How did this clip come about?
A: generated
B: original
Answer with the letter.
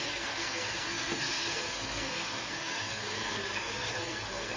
A